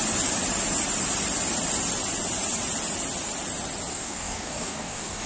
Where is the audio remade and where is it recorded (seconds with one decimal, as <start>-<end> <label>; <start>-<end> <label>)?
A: 0.0-3.9 recorded; 3.9-5.3 remade